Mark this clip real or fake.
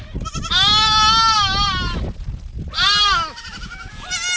real